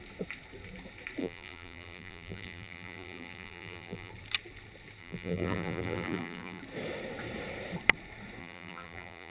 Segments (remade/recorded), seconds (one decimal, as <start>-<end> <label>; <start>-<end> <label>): 0.0-1.2 recorded; 1.2-4.1 remade; 4.1-5.0 recorded; 5.0-6.6 remade; 6.6-8.4 recorded; 8.4-9.3 remade